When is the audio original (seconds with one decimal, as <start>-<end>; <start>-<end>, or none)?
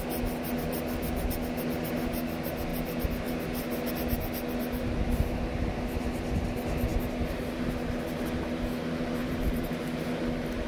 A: 0.0-9.2; 9.8-10.7